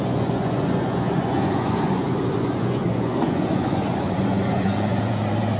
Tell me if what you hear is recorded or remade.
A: remade